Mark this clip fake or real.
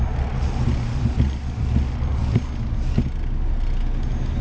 real